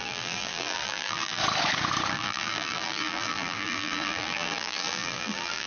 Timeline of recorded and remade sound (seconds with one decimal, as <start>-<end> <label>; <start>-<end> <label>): 0.0-1.4 remade; 1.4-2.1 recorded; 2.1-5.7 remade